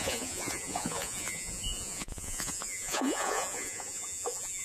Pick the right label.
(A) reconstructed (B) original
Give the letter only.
A